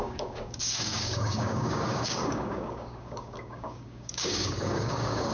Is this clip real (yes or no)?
no